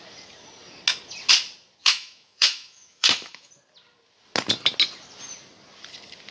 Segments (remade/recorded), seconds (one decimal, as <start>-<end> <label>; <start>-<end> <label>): 0.0-1.8 recorded; 1.8-3.5 remade; 3.5-6.3 recorded